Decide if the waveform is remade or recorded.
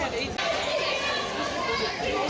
recorded